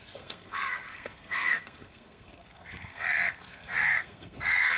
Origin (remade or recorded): remade